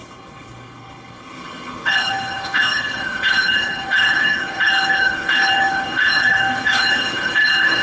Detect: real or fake fake